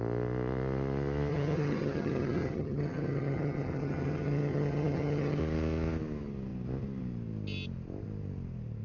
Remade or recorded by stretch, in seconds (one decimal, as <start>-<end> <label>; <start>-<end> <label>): 0.0-1.3 recorded; 1.3-5.4 remade; 5.4-8.8 recorded